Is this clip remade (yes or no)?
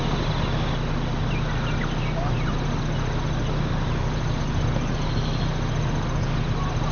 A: no